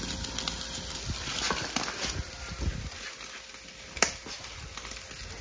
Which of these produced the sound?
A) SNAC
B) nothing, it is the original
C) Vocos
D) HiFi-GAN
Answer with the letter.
B